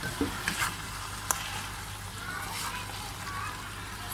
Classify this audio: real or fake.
real